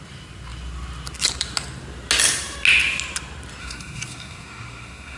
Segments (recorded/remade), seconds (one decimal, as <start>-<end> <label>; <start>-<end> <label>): 0.0-3.6 recorded; 3.6-5.2 remade